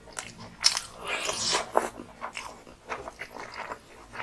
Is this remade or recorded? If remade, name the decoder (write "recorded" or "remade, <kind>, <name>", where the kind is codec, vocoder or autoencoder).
recorded